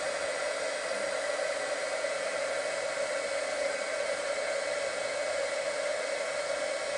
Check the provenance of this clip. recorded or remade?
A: recorded